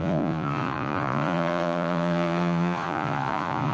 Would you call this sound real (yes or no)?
no